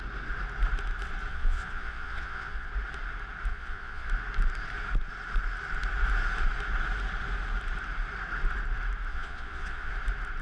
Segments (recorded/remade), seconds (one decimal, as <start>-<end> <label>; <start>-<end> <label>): 0.0-1.3 recorded; 1.3-2.7 remade; 2.7-3.5 recorded; 3.5-4.1 remade; 4.1-9.1 recorded; 9.1-9.9 remade; 9.9-10.4 recorded